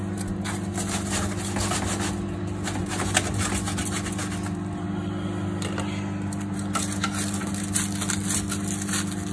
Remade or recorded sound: recorded